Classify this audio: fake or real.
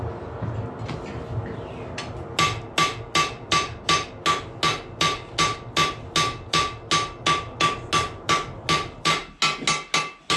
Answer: real